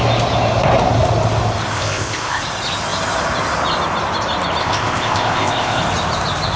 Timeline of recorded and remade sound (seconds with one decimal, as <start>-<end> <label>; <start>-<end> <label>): 0.0-1.7 recorded; 1.7-2.4 remade; 2.4-4.6 recorded; 4.6-5.8 remade; 5.8-6.6 recorded